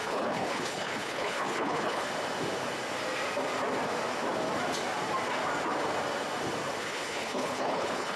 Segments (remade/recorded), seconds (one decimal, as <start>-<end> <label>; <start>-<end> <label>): 0.0-2.1 remade; 2.1-6.8 recorded; 6.8-8.2 remade